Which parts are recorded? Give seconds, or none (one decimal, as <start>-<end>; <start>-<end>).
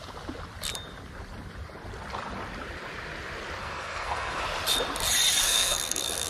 0.0-3.6; 4.4-5.4